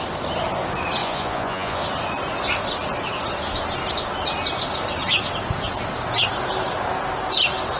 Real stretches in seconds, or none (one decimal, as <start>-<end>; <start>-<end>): 0.0-1.0; 1.8-7.8